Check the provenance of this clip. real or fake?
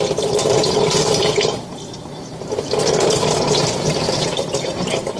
fake